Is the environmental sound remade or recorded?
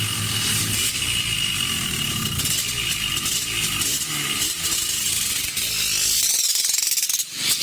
recorded